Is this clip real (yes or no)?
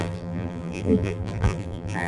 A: no